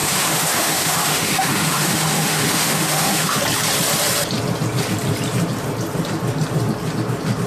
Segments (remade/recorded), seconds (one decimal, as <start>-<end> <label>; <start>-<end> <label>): 0.0-3.4 remade; 3.4-7.5 recorded